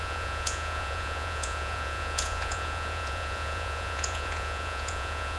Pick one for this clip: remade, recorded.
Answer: remade